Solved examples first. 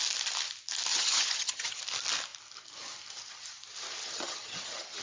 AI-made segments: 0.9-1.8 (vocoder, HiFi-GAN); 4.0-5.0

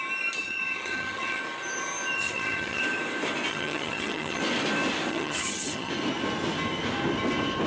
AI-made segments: 0.4-1.4 (vocoder, HiFi-GAN); 2.2-2.8; 3.5-4.4; 5.1-5.9

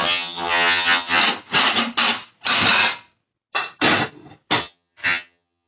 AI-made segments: 0.0-1.2 (vocoder, HiFi-GAN); 4.6-5.7

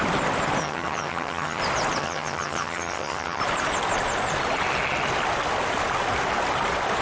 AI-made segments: 0.6-1.6 (vocoder, HiFi-GAN); 2.0-3.4

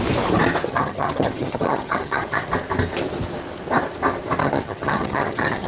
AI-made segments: 0.7-2.5 (vocoder, HiFi-GAN); 4.4-5.7

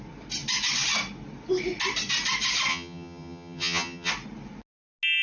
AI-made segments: 2.7-4.1 (vocoder, HiFi-GAN)

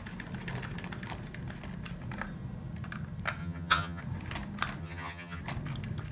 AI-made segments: 3.4-4.0 (vocoder, HiFi-GAN); 4.8-5.4

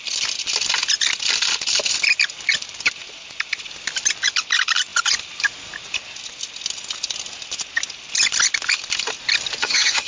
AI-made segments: 9.6-10.1 (vocoder, HiFi-GAN)